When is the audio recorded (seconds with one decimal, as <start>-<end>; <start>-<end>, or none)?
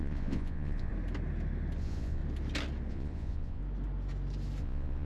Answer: 0.9-1.8; 2.2-2.9; 3.6-4.6